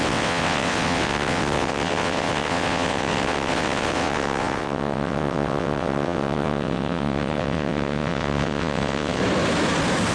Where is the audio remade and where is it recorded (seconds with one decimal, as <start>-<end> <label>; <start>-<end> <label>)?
0.0-9.2 remade; 9.2-10.1 recorded